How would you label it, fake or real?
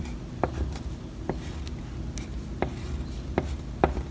real